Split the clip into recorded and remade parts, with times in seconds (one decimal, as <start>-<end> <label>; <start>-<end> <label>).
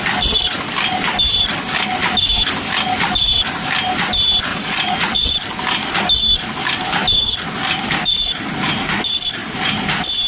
0.0-4.5 recorded; 4.5-5.3 remade; 5.3-10.3 recorded